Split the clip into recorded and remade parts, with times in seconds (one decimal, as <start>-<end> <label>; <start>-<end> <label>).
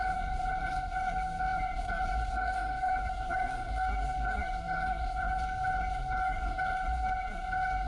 0.0-7.9 remade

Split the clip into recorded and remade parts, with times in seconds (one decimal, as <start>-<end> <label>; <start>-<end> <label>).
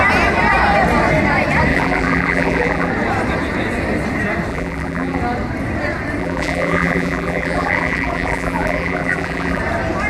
0.0-1.7 recorded; 1.7-2.9 remade; 2.9-4.5 recorded; 4.5-5.2 remade; 5.2-6.2 recorded; 6.2-9.6 remade; 9.6-10.1 recorded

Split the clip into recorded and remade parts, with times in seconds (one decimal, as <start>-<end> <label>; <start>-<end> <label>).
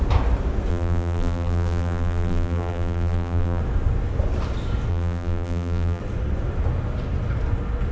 0.0-0.7 recorded; 0.7-3.6 remade; 3.6-4.9 recorded; 4.9-6.0 remade; 6.0-7.9 recorded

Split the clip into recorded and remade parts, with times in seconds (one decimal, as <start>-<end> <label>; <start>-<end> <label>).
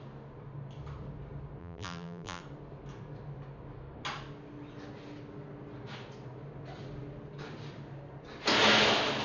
0.0-1.6 recorded; 1.6-2.4 remade; 2.4-9.2 recorded